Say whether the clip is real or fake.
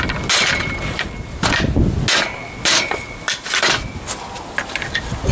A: real